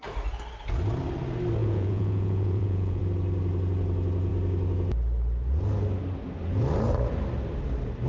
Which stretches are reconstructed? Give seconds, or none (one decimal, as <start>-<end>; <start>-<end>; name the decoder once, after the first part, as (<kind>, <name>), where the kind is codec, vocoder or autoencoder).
1.6-3.0 (vocoder, Vocos)